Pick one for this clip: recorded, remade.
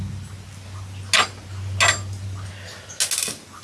recorded